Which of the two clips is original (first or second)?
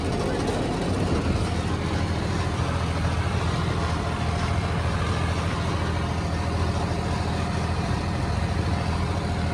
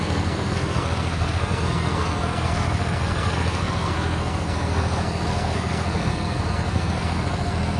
first